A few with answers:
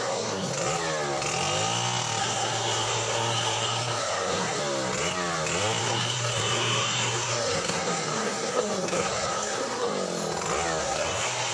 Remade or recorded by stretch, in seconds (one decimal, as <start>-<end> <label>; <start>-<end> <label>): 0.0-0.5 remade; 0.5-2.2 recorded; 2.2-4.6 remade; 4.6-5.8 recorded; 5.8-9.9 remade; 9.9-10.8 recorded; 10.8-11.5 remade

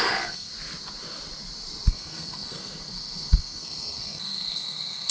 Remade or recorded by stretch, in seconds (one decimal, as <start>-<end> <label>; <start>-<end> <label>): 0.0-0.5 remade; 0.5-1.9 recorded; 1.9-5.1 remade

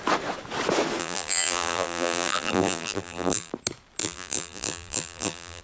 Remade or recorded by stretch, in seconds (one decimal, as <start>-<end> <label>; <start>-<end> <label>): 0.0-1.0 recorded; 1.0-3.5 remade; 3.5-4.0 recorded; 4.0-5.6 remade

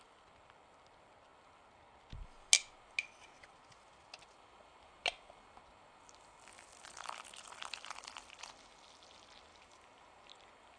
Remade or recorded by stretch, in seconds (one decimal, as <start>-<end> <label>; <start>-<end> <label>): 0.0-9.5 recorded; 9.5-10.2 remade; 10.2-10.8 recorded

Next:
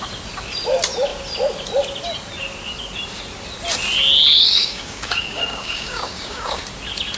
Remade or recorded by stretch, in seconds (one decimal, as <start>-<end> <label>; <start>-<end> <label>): 0.0-4.4 recorded; 4.4-6.6 remade; 6.6-7.2 recorded